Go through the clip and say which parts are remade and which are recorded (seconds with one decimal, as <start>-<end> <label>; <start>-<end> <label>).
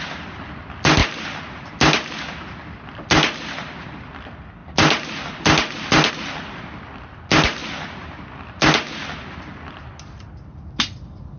0.0-11.4 recorded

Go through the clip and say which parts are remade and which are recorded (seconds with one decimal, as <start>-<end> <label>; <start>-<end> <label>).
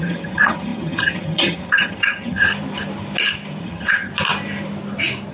0.0-2.5 remade; 2.5-3.6 recorded; 3.6-4.1 remade; 4.1-5.3 recorded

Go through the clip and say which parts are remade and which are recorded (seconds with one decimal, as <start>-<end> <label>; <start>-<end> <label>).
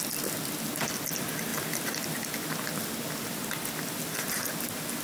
0.0-5.0 recorded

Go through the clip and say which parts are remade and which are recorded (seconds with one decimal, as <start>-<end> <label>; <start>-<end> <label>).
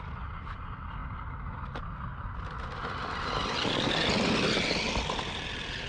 0.0-5.9 recorded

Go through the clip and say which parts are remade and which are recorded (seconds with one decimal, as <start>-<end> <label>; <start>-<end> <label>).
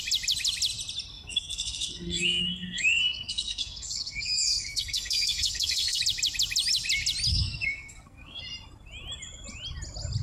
0.0-1.1 recorded; 1.1-6.0 remade; 6.0-7.3 recorded; 7.3-8.4 remade; 8.4-10.2 recorded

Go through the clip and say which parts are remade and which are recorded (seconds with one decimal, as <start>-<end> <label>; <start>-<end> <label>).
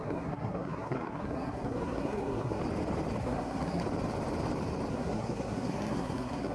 0.0-2.6 remade; 2.6-3.2 recorded; 3.2-3.8 remade; 3.8-4.9 recorded; 4.9-6.5 remade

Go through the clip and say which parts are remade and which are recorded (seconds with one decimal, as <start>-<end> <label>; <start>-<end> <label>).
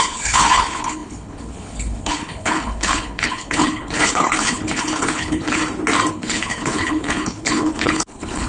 0.0-5.6 remade; 5.6-6.1 recorded; 6.1-8.5 remade